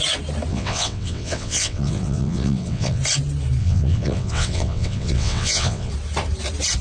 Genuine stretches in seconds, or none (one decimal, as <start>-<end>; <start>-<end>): 0.0-0.5; 3.0-3.6; 5.9-6.8